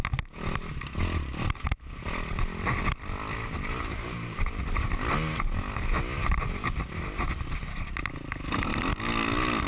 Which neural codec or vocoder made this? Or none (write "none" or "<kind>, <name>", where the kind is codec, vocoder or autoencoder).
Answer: none